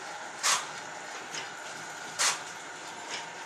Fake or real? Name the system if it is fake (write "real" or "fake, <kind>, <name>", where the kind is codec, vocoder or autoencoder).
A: real